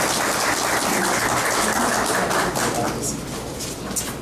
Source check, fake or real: real